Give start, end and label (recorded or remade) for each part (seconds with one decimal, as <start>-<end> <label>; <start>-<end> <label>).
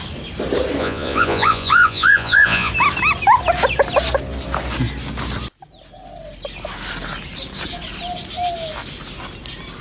0.0-0.8 recorded; 0.8-2.7 remade; 2.7-9.8 recorded